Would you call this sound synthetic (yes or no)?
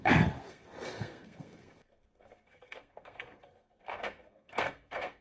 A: yes